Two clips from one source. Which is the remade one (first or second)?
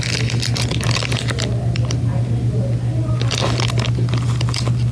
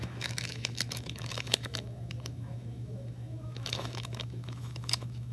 second